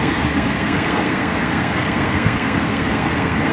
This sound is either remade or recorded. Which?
remade